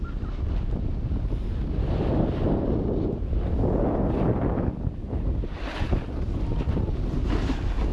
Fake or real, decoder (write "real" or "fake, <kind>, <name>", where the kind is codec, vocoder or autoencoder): real